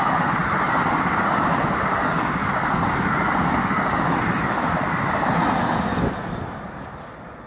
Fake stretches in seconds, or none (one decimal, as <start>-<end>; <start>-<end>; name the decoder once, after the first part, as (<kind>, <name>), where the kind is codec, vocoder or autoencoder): none